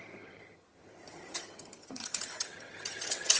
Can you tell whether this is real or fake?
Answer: fake